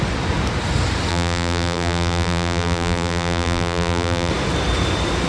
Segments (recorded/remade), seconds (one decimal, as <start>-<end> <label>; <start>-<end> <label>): 0.0-1.1 recorded; 1.1-4.3 remade; 4.3-5.3 recorded